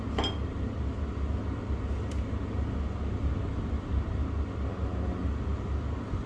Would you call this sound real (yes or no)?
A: yes